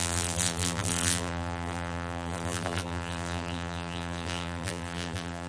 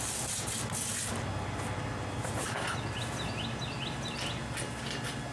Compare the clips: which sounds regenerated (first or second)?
first